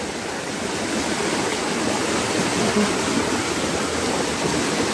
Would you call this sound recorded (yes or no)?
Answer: yes